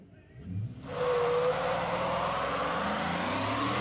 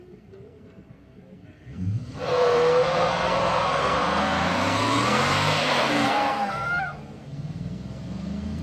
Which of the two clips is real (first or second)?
first